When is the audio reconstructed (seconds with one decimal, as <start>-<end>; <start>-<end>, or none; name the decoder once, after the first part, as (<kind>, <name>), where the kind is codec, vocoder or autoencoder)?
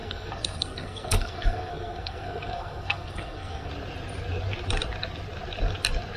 0.0-3.7 (codec, SNAC)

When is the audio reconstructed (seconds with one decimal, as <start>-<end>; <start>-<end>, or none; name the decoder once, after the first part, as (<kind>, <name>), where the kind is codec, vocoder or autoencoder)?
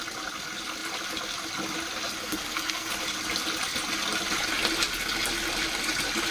2.2-2.9 (codec, SNAC)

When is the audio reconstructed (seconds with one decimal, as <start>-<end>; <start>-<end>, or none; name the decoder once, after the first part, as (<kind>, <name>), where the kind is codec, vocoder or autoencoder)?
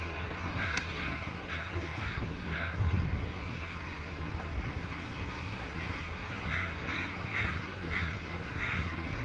0.0-9.2 (codec, SNAC)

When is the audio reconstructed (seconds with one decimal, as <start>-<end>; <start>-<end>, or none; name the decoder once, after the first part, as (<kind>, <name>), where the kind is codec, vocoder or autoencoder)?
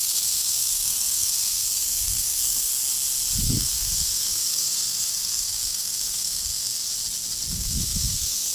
0.0-2.7 (codec, SNAC); 3.4-6.9; 7.5-8.5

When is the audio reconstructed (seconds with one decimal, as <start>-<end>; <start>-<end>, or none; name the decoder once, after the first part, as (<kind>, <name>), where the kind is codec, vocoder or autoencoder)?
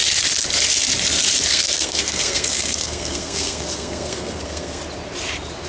1.5-4.8 (codec, SNAC)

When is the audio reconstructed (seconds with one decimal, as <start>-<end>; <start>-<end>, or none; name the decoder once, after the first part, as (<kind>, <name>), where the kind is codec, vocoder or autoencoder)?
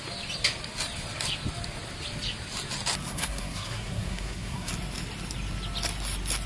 3.1-4.7 (codec, SNAC)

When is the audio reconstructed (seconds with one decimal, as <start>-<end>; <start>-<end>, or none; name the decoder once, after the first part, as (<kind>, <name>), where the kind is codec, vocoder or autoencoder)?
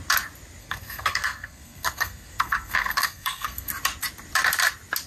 0.6-3.7 (codec, SNAC)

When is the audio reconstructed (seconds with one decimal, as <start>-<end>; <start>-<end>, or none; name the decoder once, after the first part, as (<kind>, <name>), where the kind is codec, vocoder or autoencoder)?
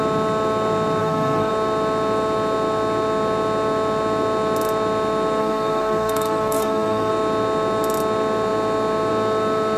1.0-1.5 (codec, SNAC); 5.4-7.1